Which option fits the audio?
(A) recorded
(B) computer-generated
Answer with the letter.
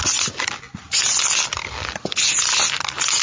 A